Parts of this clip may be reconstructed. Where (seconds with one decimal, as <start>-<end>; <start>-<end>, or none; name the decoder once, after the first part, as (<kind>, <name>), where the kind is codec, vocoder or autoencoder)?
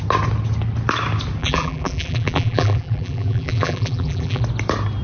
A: 1.4-4.4 (vocoder, BigVGAN v2)